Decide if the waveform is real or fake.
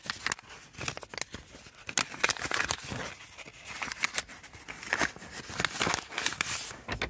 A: real